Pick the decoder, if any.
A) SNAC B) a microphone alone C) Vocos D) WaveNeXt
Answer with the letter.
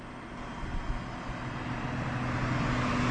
B